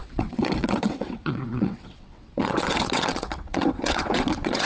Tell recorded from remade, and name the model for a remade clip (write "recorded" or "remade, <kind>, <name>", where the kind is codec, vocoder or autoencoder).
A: remade, vocoder, WaveNeXt